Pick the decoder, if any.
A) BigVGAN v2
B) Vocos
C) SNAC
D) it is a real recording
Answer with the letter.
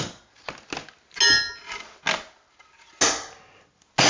D